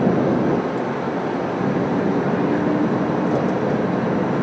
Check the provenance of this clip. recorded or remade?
recorded